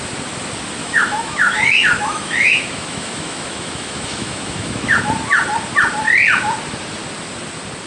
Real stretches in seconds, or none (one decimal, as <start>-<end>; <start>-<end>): 0.0-0.8; 5.0-7.9